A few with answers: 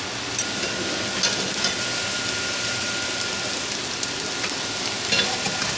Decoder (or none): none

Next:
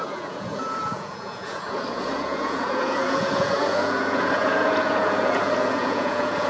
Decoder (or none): vocoder, Vocos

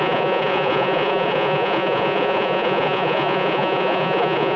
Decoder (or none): vocoder, Vocos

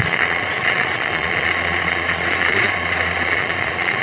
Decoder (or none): vocoder, Vocos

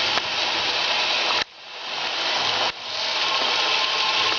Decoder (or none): none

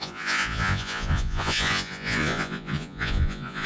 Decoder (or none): vocoder, Vocos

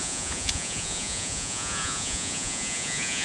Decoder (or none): vocoder, Vocos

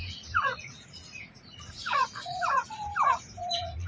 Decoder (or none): vocoder, Vocos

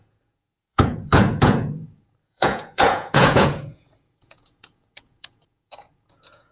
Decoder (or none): vocoder, Vocos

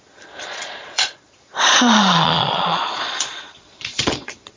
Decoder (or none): vocoder, Vocos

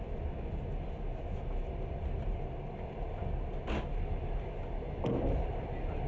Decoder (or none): none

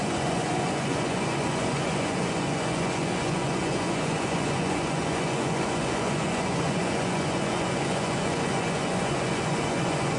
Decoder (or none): vocoder, Vocos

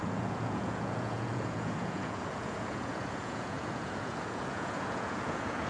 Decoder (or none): vocoder, Vocos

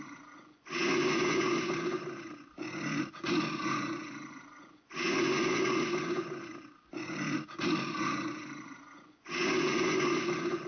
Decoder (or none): vocoder, Vocos